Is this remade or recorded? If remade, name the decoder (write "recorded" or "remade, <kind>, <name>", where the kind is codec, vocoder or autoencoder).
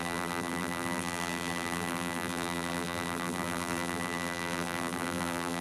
remade, vocoder, BigVGAN v2